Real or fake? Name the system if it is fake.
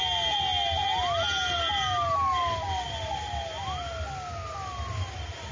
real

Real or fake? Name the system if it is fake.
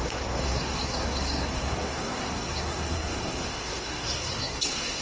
fake, codec, SNAC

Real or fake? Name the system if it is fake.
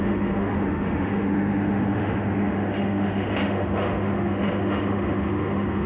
fake, autoencoder, DAC-VAE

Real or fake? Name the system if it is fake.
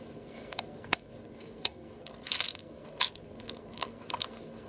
fake, codec, SNAC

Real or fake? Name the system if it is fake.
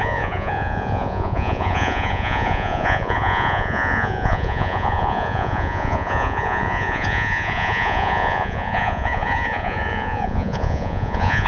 fake, vocoder, Vocos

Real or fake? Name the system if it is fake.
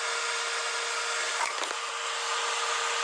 real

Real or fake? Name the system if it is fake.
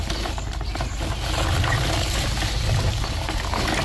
real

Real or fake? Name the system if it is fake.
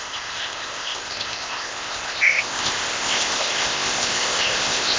fake, codec, ZipCodec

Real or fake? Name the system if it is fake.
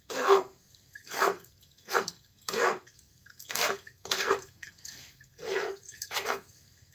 fake, codec, SNAC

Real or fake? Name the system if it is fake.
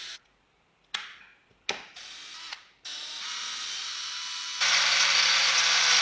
real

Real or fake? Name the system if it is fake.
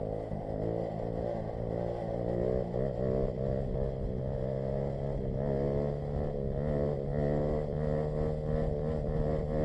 real